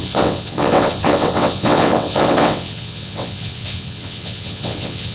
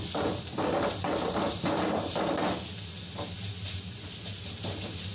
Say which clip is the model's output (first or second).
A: first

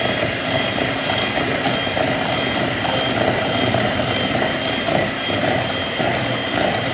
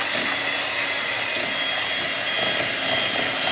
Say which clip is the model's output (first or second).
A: first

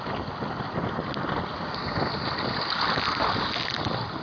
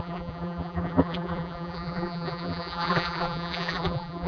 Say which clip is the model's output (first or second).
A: second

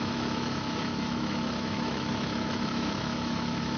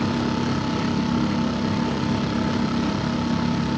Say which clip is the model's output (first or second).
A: first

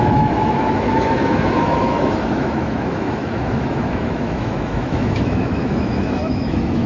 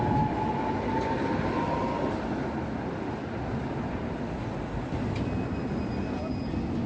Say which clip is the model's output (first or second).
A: first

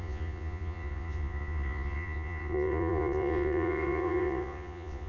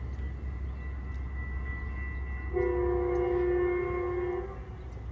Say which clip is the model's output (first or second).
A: first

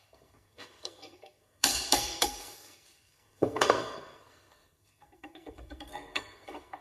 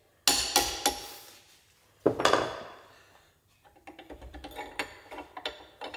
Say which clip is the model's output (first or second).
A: first